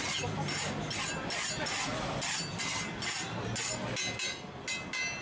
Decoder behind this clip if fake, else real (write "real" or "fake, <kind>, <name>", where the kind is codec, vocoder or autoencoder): real